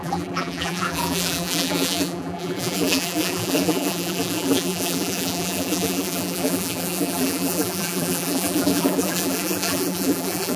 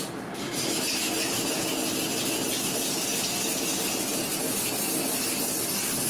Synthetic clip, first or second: first